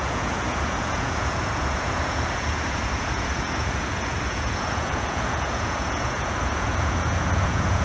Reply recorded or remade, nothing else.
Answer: remade